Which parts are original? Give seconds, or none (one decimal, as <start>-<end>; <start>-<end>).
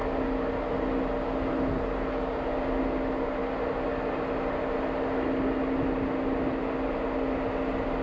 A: 0.0-8.0